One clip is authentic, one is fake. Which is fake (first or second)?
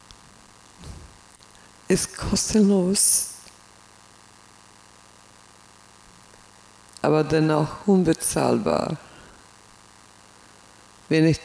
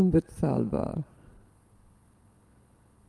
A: second